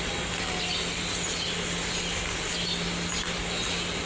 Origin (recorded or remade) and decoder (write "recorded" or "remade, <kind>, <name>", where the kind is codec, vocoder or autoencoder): recorded